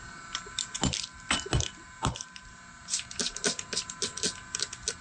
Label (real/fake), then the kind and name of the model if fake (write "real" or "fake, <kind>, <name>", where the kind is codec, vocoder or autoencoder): real